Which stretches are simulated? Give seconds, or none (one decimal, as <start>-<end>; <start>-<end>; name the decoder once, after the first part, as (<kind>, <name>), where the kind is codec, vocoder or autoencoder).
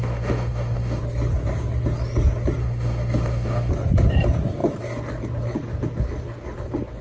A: 0.0-1.0 (autoencoder, DAC-VAE); 2.6-3.7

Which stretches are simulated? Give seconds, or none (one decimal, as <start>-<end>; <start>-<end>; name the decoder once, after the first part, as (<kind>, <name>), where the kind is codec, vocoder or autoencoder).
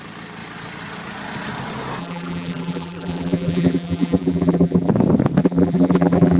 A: 2.0-4.9 (vocoder, BigVGAN v2); 5.4-6.4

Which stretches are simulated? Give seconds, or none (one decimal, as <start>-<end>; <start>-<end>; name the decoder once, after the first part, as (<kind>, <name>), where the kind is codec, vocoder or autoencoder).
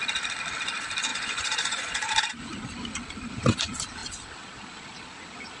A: 1.1-2.1 (vocoder, Vocos)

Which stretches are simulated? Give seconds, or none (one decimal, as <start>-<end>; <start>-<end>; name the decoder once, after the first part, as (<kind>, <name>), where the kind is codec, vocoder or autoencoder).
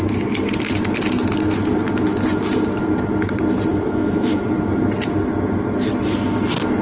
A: 3.7-4.4 (autoencoder, DAC-VAE)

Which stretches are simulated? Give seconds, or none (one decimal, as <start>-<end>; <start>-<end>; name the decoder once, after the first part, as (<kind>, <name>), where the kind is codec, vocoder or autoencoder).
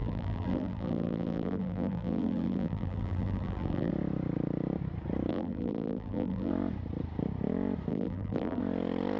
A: 0.0-3.9 (vocoder, BigVGAN v2); 5.3-6.5; 7.9-8.6